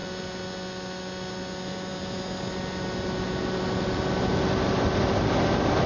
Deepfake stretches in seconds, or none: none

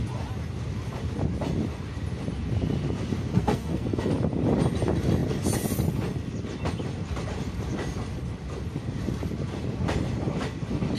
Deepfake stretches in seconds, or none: 3.3-4.1 (codec, SNAC)